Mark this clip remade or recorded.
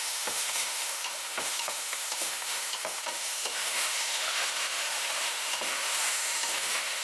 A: remade